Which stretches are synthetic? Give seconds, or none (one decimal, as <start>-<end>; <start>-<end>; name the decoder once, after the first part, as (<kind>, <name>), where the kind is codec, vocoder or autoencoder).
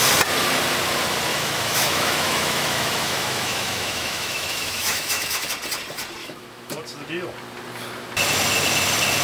1.3-5.5 (autoencoder, DAC-VAE); 6.2-6.8